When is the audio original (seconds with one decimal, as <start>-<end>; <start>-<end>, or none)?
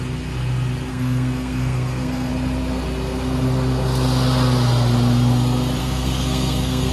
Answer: 0.0-0.9; 2.3-5.8